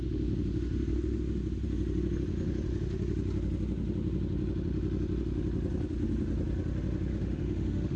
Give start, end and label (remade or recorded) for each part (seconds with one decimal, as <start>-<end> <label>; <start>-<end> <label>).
0.0-7.1 recorded; 7.1-8.0 remade